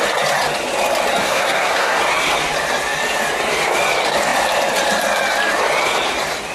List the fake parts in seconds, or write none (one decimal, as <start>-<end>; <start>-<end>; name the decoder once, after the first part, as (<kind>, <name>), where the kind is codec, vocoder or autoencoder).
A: 1.2-2.0 (codec, SNAC)